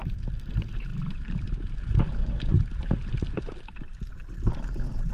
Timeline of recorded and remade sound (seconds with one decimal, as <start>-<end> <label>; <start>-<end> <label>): 0.0-0.5 remade; 0.5-0.9 recorded; 0.9-1.6 remade; 1.6-2.2 recorded; 2.2-3.6 remade; 3.6-5.1 recorded